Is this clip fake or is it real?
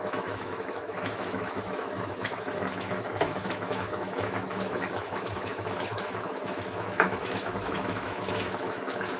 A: fake